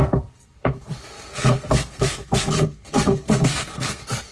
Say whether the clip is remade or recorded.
remade